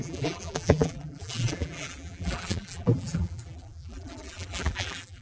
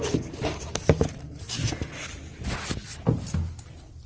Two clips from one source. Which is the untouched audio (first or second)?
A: second